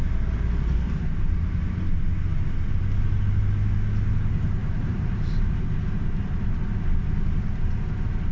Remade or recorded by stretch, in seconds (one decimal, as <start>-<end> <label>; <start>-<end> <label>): 0.0-4.6 recorded; 4.6-5.6 remade; 5.6-8.3 recorded